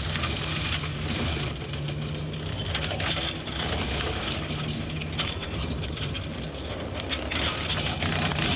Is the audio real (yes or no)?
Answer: yes